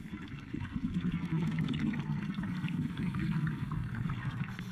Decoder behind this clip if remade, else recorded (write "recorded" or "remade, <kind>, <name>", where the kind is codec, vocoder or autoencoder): remade, codec, SNAC